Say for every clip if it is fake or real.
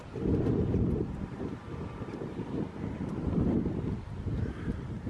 real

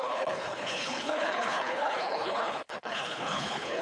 fake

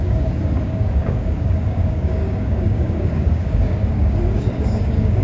fake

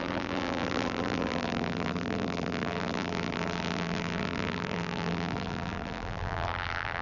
fake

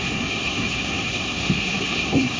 fake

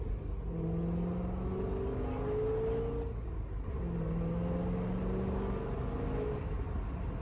real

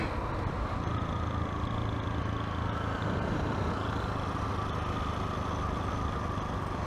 real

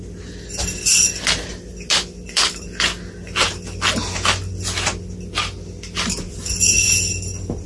real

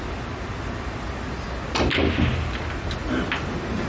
real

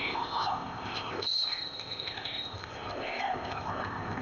fake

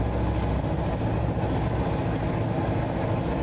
real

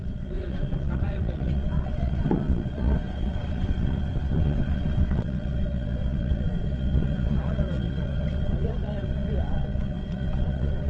fake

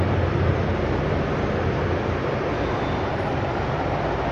real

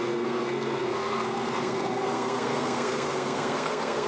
fake